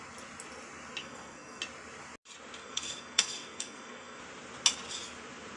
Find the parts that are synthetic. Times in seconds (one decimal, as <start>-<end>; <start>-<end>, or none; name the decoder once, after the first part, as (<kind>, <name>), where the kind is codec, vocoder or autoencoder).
1.0-1.6 (codec, SNAC); 2.6-4.2